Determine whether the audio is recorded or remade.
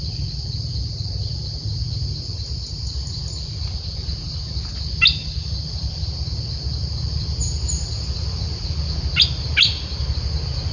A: recorded